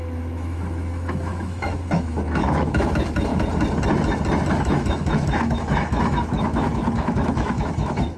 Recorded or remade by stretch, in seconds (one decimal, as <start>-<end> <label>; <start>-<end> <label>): 0.0-3.3 remade; 3.3-4.5 recorded; 4.5-8.2 remade